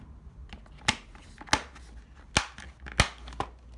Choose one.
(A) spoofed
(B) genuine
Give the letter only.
B